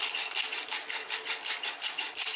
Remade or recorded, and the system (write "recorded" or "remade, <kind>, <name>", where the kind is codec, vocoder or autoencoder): recorded